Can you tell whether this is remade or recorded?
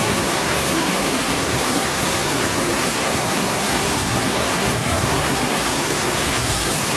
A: remade